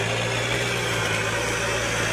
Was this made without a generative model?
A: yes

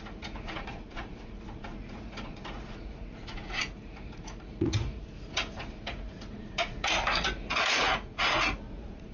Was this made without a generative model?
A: no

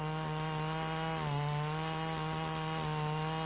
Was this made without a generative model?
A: yes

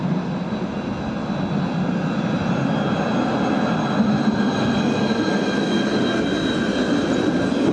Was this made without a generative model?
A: yes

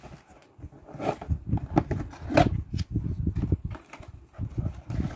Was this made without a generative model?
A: yes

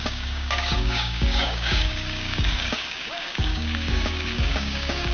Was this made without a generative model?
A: no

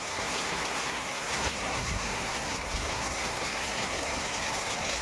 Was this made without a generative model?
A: no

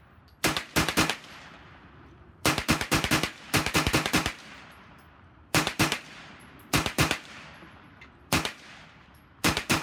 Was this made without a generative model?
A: no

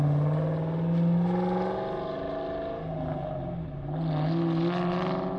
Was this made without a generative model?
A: yes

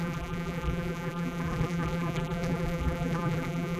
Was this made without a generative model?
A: no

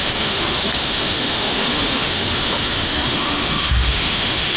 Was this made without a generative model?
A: no